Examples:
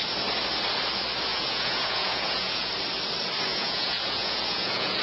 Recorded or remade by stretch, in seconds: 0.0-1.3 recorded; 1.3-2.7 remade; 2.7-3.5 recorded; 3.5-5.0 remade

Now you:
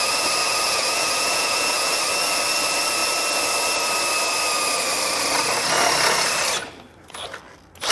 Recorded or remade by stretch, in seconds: 0.0-0.4 recorded; 0.4-2.0 remade; 2.0-7.9 recorded

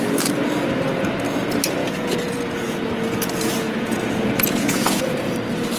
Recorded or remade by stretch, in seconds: 0.0-1.8 recorded; 1.8-5.3 remade; 5.3-5.8 recorded

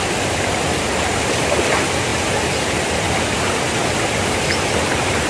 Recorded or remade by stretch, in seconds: 0.0-5.3 recorded

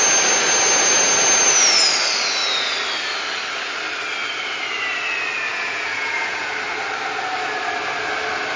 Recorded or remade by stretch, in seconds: 0.0-5.5 recorded; 5.5-6.5 remade; 6.5-8.6 recorded

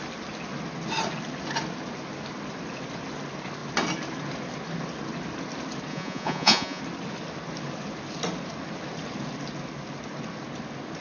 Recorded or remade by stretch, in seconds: 0.0-5.9 recorded; 5.9-6.8 remade; 6.8-11.0 recorded

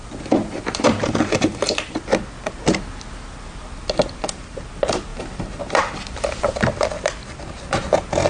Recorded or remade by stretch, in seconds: 0.0-8.3 recorded

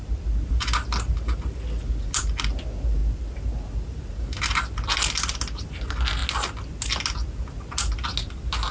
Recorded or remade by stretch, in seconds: 0.0-8.7 recorded